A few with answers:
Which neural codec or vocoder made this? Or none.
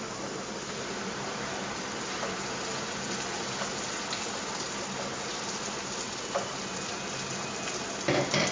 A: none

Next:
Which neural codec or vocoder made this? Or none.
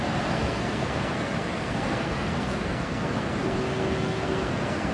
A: codec, SNAC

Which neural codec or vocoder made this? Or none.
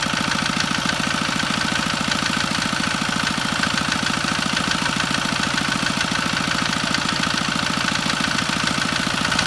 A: vocoder, BigVGAN v2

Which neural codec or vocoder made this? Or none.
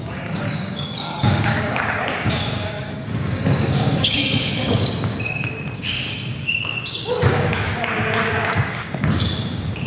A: codec, DAC